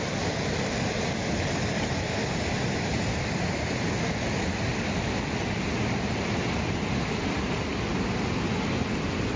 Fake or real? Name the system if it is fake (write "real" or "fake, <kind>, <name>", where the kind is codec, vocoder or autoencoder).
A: real